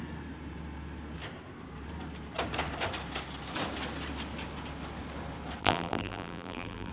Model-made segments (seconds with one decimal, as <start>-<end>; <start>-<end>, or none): 5.6-6.9

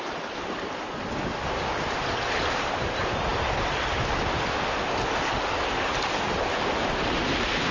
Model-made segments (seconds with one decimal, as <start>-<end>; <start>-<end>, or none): none

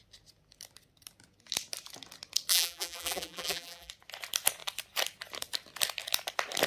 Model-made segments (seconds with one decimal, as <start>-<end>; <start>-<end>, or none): 2.5-3.9

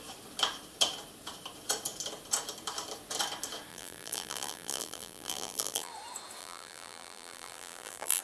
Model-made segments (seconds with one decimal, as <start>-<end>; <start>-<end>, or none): 3.7-5.9; 6.4-8.2

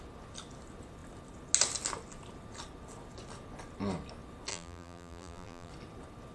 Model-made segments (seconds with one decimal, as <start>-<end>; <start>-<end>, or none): 4.5-5.7

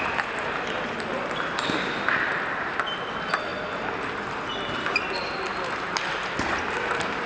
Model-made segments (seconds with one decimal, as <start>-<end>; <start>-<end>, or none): none